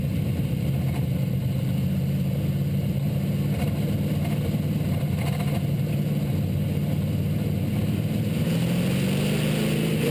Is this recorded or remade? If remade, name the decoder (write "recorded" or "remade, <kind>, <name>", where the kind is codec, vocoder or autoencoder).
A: recorded